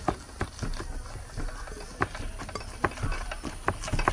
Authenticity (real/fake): real